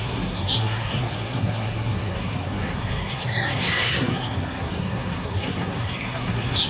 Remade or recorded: remade